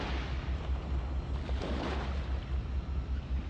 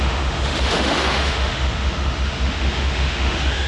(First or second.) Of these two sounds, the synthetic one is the second